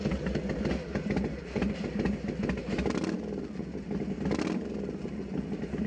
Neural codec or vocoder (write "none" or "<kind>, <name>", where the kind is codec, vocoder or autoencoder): none